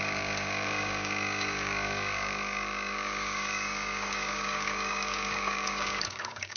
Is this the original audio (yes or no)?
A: no